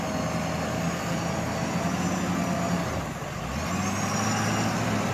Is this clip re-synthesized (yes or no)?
no